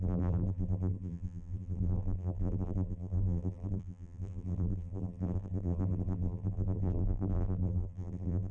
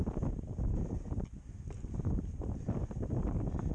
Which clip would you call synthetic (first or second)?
first